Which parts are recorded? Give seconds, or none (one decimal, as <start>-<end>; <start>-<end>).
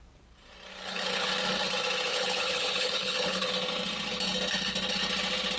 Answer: 0.0-0.7; 1.3-2.1; 3.5-5.6